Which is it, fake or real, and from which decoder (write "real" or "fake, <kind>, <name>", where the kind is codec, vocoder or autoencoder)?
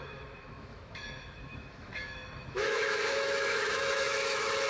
fake, autoencoder, DAC-VAE